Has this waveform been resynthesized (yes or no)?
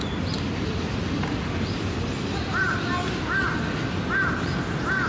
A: no